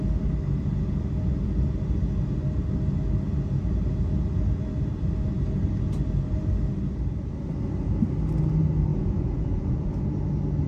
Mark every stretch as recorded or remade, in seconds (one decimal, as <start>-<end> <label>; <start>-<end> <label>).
0.0-8.9 recorded; 8.9-9.9 remade; 9.9-10.7 recorded

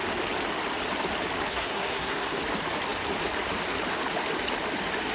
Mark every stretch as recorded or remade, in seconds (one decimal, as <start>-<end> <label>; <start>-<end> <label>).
0.0-1.5 recorded; 1.5-2.4 remade; 2.4-5.1 recorded

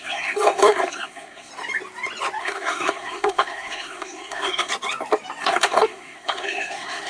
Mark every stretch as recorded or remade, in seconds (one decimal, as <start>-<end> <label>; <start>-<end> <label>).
0.0-1.5 remade; 1.5-2.4 recorded; 2.4-4.7 remade; 4.7-5.4 recorded; 5.4-7.1 remade